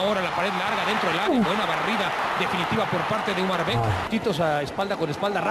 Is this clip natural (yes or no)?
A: yes